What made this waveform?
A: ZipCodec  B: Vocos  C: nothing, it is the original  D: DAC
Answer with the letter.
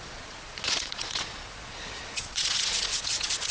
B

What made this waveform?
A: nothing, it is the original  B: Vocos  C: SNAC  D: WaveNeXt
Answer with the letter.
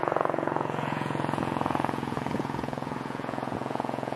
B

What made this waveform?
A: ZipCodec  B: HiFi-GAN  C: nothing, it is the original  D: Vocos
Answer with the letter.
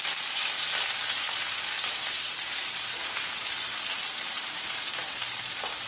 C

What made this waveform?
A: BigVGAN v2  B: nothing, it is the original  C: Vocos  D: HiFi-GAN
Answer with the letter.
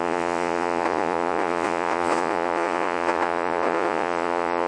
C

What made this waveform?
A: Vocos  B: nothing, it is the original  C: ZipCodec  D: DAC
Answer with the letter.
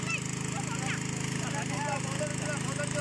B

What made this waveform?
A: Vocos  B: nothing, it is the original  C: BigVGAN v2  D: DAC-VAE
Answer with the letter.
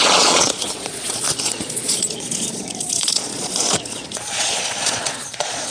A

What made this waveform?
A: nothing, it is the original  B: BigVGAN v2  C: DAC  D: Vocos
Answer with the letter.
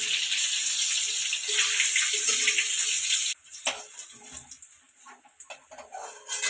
A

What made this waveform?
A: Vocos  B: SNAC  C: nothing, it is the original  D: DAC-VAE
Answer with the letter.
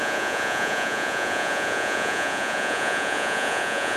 A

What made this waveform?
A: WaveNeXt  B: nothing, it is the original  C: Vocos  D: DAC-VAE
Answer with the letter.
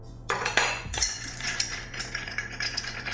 C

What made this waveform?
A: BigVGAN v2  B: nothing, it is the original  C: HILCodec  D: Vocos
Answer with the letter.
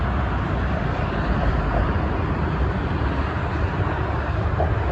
B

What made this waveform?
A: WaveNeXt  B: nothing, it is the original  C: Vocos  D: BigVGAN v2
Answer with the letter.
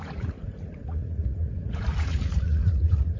C